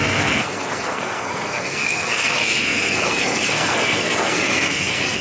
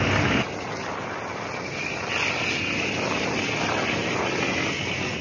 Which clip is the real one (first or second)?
second